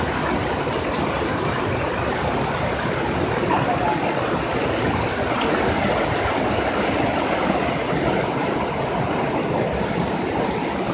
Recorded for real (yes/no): yes